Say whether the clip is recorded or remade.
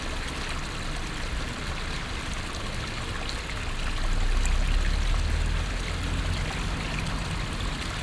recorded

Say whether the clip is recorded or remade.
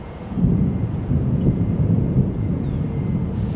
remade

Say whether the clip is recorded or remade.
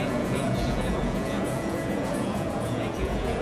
remade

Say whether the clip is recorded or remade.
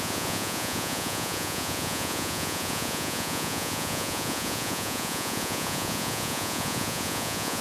remade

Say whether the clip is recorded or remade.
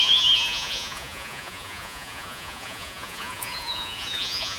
remade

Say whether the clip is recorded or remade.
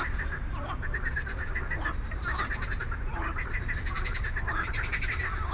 recorded